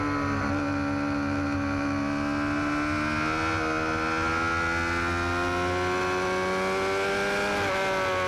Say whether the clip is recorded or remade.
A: recorded